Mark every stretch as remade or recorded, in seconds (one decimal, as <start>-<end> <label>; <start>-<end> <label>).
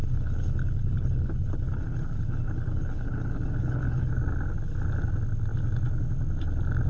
0.0-4.1 remade; 4.1-6.9 recorded